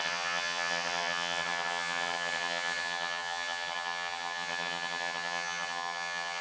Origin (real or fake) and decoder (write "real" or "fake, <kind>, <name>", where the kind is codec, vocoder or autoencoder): fake, vocoder, HiFi-GAN